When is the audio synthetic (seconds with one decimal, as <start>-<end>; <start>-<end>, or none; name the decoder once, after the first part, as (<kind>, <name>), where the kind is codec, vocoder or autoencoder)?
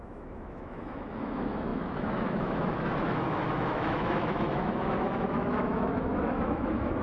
0.0-7.0 (autoencoder, DAC-VAE)